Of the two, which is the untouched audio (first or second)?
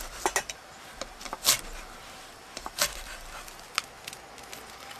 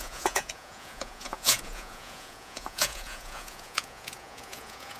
first